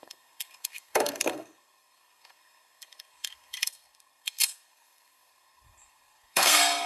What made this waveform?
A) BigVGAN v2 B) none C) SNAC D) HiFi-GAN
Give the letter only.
C